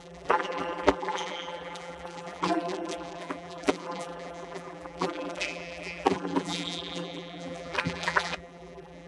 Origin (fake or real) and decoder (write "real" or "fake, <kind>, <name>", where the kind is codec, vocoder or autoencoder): fake, vocoder, BigVGAN v2